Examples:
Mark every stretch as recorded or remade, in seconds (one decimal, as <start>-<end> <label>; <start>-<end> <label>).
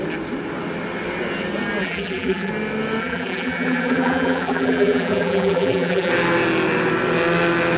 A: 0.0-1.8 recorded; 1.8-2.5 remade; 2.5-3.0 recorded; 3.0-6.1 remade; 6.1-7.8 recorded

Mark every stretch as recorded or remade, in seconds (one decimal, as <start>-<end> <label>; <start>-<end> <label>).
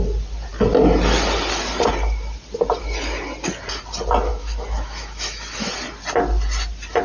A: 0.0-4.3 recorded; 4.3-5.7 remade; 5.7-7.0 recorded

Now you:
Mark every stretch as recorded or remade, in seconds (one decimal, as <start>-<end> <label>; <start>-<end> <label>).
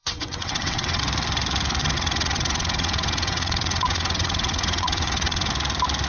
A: 0.0-1.0 remade; 1.0-1.8 recorded; 1.8-5.5 remade; 5.5-6.1 recorded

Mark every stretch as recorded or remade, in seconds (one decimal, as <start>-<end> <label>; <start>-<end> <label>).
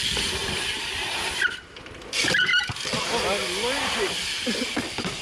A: 0.0-0.4 recorded; 0.4-2.0 remade; 2.0-5.2 recorded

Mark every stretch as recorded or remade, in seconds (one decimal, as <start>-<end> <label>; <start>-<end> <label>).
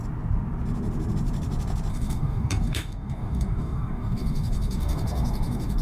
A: 0.0-1.9 recorded; 1.9-5.8 remade